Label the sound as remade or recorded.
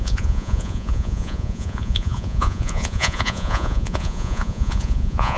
remade